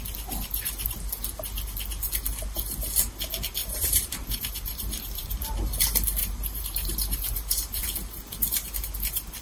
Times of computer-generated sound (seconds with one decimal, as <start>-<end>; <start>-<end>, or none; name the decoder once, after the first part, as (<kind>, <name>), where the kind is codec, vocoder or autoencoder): 3.6-5.8 (vocoder, BigVGAN v2); 6.2-7.8